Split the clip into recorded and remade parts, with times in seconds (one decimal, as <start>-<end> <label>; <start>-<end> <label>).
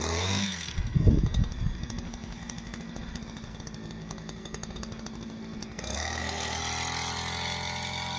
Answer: 0.0-6.6 remade; 6.6-8.2 recorded